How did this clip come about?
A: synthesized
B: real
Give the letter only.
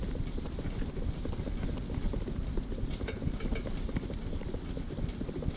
B